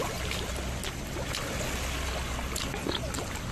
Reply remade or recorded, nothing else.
recorded